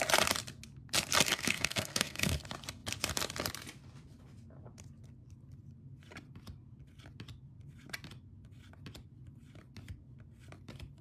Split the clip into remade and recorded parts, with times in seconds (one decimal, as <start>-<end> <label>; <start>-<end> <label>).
0.0-1.3 recorded; 1.3-2.4 remade; 2.4-11.0 recorded